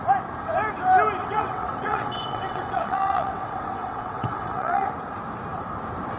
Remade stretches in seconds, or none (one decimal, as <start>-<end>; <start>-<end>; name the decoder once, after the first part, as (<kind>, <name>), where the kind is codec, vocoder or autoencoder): 1.2-4.9 (vocoder, WaveNeXt)

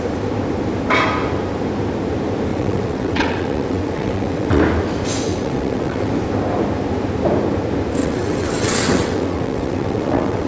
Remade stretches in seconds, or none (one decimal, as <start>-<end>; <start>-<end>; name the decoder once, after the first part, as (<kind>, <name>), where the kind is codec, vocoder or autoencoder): 2.5-4.6 (vocoder, WaveNeXt); 5.3-6.1; 8.0-10.5

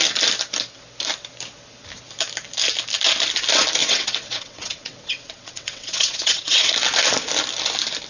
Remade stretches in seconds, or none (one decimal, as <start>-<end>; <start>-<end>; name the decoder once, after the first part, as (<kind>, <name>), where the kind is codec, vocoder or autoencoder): 3.8-6.7 (vocoder, WaveNeXt)

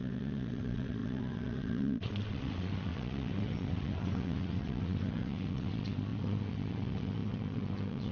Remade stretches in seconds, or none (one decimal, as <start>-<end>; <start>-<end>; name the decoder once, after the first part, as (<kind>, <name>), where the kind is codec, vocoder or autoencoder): 0.0-8.1 (vocoder, WaveNeXt)

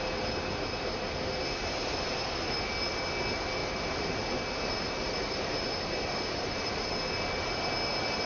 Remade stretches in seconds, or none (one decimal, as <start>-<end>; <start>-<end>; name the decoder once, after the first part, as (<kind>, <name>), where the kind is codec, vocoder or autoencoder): none

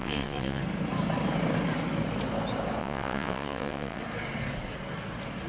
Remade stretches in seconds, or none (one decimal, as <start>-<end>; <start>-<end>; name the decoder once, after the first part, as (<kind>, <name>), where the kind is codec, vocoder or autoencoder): 0.0-0.6 (vocoder, WaveNeXt); 2.8-4.0

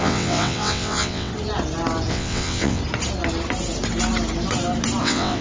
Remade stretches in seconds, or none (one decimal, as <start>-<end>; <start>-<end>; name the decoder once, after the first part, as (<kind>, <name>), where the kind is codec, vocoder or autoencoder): 0.0-1.3 (vocoder, WaveNeXt); 2.1-2.8; 5.0-5.4

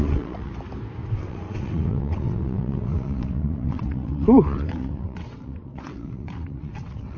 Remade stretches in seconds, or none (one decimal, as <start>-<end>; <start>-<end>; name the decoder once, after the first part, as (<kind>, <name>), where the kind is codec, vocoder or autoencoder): 0.0-0.5 (vocoder, WaveNeXt); 1.1-7.2